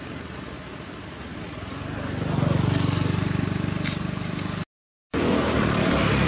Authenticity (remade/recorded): recorded